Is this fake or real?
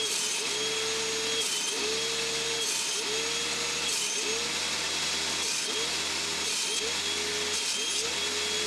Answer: real